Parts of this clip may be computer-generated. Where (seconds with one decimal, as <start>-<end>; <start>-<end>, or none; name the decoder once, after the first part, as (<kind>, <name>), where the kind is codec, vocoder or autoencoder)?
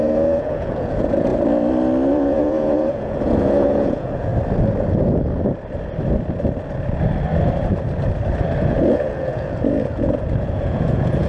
0.0-1.3 (vocoder, Vocos); 2.1-4.3; 8.7-11.3